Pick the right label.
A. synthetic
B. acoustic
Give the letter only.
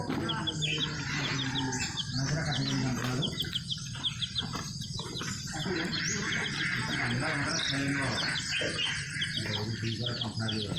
B